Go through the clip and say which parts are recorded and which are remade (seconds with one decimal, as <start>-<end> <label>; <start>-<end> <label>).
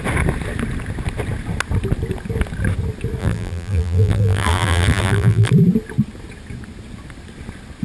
0.0-3.2 recorded; 3.2-5.5 remade; 5.5-7.8 recorded